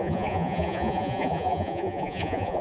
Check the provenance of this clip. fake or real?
fake